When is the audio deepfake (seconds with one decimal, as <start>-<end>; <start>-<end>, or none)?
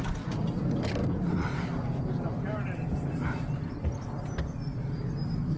none